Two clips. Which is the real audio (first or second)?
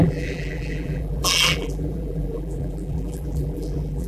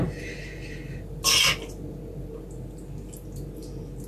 second